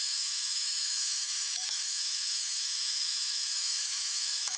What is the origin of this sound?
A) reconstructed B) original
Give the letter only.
A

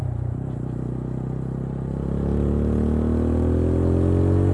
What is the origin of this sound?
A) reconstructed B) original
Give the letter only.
B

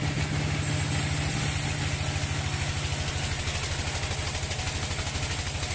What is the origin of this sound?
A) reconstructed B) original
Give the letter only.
B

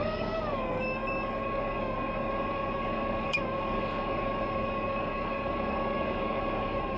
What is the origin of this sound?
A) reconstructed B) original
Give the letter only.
A